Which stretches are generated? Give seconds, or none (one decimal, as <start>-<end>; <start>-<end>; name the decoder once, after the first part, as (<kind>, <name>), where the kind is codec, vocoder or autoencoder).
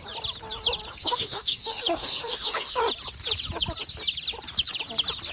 1.0-2.8 (autoencoder, DAC-VAE)